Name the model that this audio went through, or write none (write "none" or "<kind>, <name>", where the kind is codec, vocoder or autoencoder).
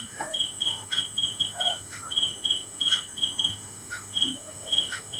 autoencoder, DAC-VAE